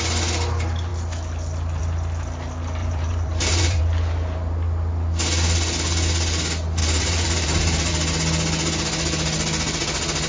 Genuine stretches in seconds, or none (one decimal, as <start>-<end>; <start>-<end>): 0.0-2.8; 3.8-6.8; 7.9-10.3